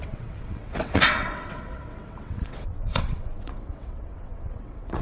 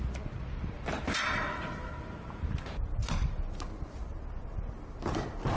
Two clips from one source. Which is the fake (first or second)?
first